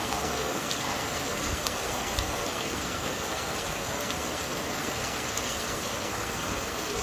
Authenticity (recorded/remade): remade